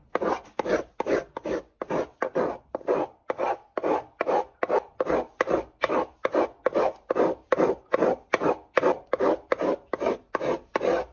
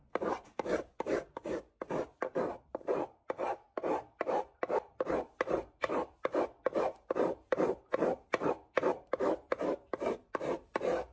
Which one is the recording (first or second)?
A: first